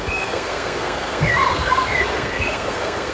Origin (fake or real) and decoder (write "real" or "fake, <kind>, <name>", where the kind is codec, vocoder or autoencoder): fake, codec, SNAC